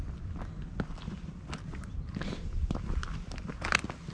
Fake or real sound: real